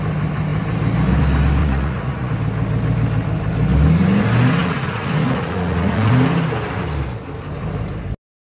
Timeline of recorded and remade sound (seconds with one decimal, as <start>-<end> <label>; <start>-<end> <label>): 0.0-1.6 recorded; 1.6-2.3 remade; 2.3-4.6 recorded; 4.6-6.1 remade; 6.1-8.5 recorded